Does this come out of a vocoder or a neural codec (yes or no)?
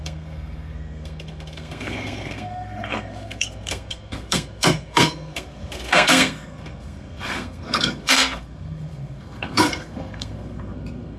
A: yes